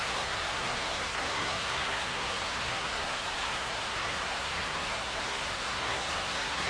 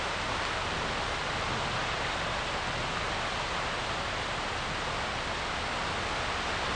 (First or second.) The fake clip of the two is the first